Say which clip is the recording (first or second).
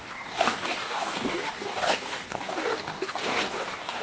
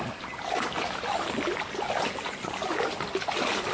second